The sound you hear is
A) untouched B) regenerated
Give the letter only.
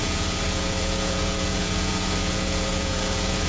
B